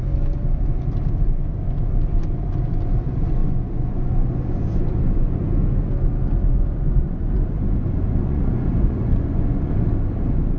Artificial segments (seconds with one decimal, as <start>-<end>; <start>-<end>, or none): 3.4-5.4; 6.5-9.7